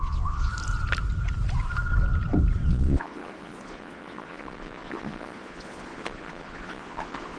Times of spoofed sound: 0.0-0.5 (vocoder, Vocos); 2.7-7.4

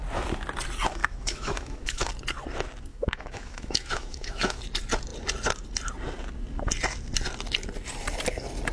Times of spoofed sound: 1.0-2.1 (autoencoder, DAC-VAE); 2.9-4.6

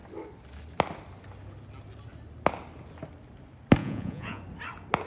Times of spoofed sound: 3.8-4.4 (vocoder, Vocos)

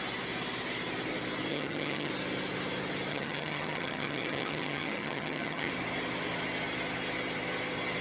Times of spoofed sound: 1.5-2.1 (vocoder, HiFi-GAN); 3.1-5.7

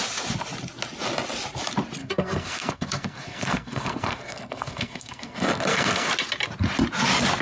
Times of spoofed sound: 2.0-6.1 (codec, SNAC)

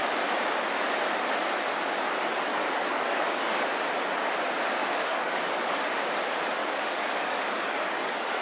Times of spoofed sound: 2.5-3.7 (codec, DAC); 4.8-5.8; 6.6-8.4